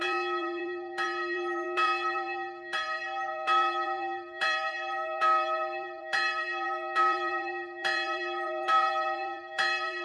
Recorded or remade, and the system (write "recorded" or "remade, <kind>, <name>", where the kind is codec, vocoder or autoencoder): remade, vocoder, BigVGAN v2